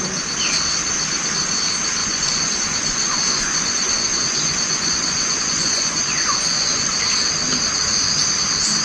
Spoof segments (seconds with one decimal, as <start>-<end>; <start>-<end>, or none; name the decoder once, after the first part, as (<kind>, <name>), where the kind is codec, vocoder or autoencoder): 2.0-7.0 (vocoder, Vocos)